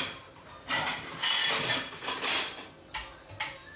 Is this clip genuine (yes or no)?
yes